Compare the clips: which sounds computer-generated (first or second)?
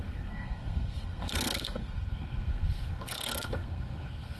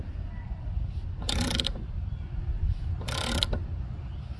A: first